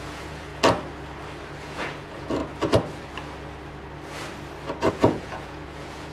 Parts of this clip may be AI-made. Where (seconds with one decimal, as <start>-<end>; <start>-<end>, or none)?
0.0-0.5; 1.6-2.4; 4.9-6.1